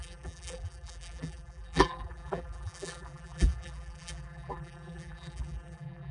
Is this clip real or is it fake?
fake